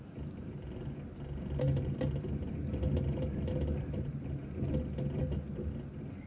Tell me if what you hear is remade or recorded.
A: recorded